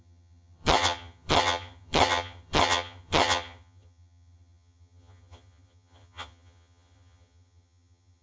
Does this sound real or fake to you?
fake